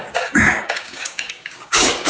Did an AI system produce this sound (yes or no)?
yes